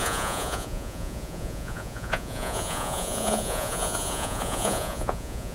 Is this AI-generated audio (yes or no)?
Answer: yes